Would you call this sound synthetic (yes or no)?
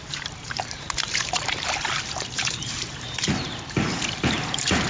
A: yes